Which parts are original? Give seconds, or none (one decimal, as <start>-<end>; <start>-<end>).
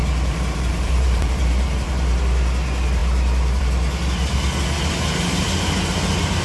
2.2-6.4